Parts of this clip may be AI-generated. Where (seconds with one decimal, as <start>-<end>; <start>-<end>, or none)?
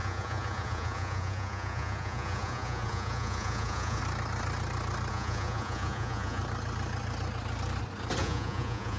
0.0-4.0; 5.1-6.4; 8.2-9.0